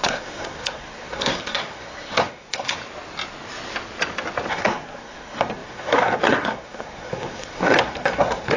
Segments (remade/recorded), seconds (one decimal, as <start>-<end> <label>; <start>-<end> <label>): 0.0-2.8 remade; 2.8-4.5 recorded; 4.5-8.6 remade